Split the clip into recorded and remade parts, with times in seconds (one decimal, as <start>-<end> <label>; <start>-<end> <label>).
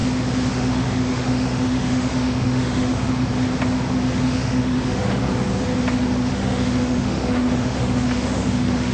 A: 0.0-0.5 recorded; 0.5-3.3 remade; 3.3-4.2 recorded; 4.2-5.2 remade; 5.2-6.3 recorded; 6.3-8.9 remade